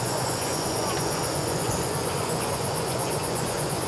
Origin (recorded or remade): remade